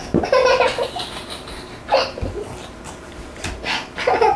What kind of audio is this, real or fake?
real